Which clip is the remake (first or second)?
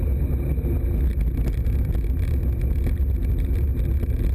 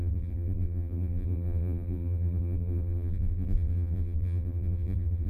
second